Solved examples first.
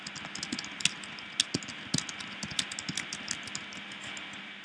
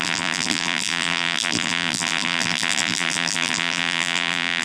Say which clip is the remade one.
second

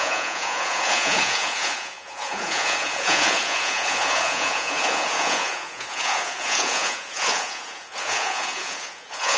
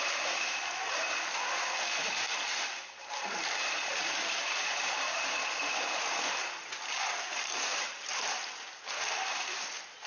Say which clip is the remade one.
first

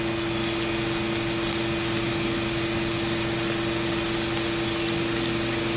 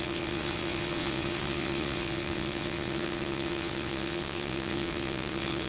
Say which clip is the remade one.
second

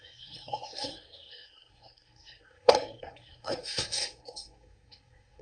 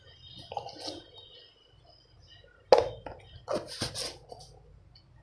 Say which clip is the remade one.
first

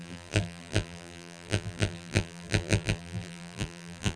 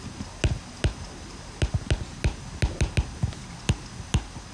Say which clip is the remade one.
first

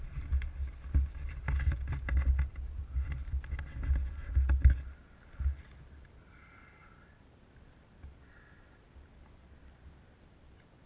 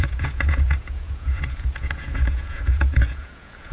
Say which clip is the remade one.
second